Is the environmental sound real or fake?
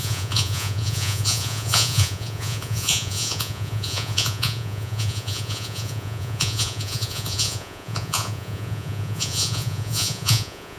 fake